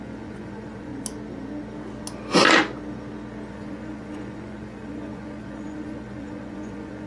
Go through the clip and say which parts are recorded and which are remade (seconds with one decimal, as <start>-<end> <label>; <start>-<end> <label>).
0.0-0.9 remade; 0.9-3.5 recorded; 3.5-7.1 remade